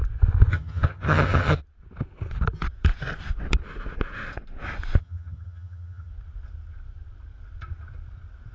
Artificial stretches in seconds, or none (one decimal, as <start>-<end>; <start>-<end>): 0.5-1.6; 5.0-6.1